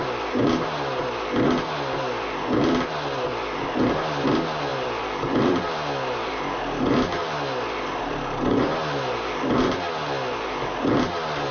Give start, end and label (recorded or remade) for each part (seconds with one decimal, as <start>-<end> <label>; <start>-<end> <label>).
0.0-11.5 recorded

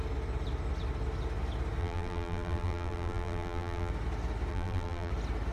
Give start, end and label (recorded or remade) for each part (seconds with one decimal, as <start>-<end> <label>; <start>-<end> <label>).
0.0-1.8 recorded; 1.8-3.9 remade; 3.9-4.5 recorded; 4.5-5.1 remade; 5.1-5.5 recorded

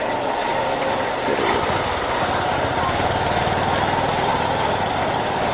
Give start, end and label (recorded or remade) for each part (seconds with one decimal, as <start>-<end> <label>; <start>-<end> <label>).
0.0-4.3 recorded; 4.3-4.9 remade; 4.9-5.5 recorded

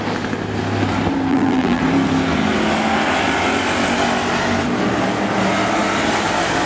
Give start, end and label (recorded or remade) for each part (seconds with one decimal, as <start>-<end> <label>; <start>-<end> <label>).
0.0-1.3 recorded; 1.3-1.8 remade; 1.8-6.7 recorded

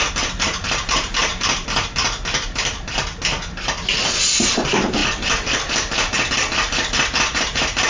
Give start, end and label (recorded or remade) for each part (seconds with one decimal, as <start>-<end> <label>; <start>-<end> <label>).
0.0-1.3 remade; 1.3-4.5 recorded; 4.5-7.9 remade

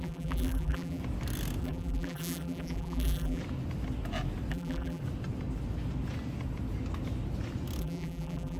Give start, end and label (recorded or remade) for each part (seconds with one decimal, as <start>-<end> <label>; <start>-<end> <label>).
0.0-1.0 remade; 1.0-1.6 recorded; 1.6-3.4 remade; 3.4-4.5 recorded; 4.5-5.0 remade; 5.0-7.8 recorded; 7.8-8.6 remade